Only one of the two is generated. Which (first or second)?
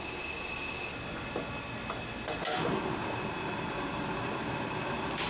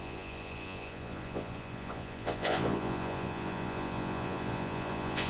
second